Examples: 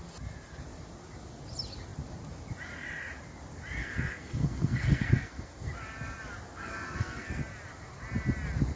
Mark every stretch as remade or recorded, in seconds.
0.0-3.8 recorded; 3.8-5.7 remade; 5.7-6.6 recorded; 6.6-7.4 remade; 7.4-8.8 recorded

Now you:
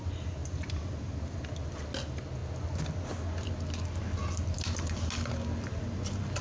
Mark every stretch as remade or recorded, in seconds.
0.0-6.4 recorded

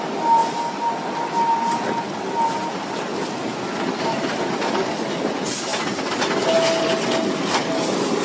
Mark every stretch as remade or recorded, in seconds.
0.0-8.2 recorded

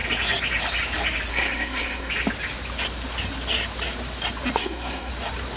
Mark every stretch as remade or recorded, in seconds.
0.0-1.3 recorded; 1.3-2.1 remade; 2.1-4.6 recorded; 4.6-5.1 remade; 5.1-5.6 recorded

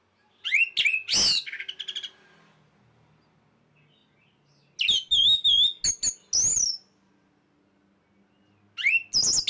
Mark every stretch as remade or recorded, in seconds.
0.0-9.5 recorded

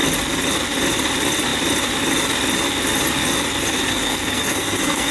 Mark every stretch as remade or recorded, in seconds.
0.0-3.9 recorded; 3.9-5.1 remade